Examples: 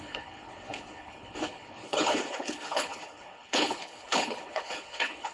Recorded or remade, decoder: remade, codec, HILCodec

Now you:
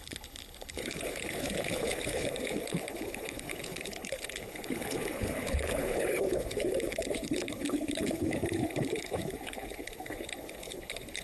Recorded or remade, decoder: remade, codec, HILCodec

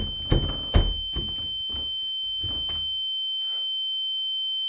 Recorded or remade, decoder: recorded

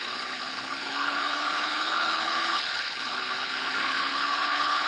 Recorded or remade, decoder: remade, codec, HILCodec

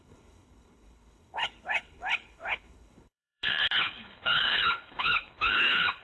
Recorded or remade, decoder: remade, codec, HILCodec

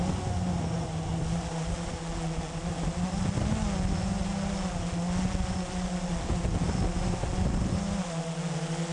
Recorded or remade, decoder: recorded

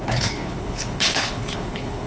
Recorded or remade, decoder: remade, codec, HILCodec